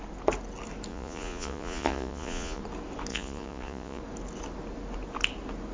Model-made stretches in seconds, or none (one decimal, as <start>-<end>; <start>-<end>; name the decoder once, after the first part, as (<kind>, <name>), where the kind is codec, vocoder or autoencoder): 0.9-2.6 (vocoder, Vocos); 3.1-4.0